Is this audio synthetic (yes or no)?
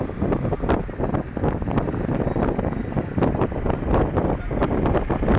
no